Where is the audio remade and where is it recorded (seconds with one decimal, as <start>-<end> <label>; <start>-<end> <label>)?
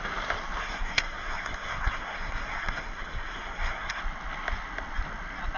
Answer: 0.0-0.6 recorded; 0.6-4.0 remade; 4.0-5.6 recorded